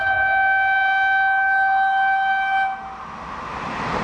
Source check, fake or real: real